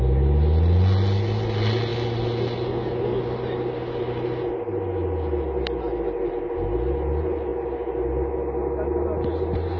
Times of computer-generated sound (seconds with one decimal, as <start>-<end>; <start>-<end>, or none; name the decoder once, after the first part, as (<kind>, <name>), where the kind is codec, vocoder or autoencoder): none